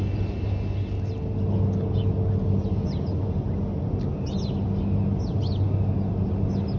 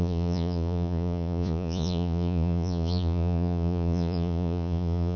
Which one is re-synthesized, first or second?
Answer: second